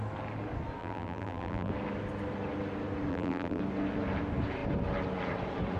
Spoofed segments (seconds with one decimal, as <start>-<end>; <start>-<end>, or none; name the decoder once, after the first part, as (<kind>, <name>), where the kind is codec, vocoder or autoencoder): 0.8-1.7 (vocoder, BigVGAN v2); 3.1-3.6